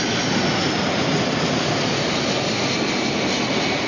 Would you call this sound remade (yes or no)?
no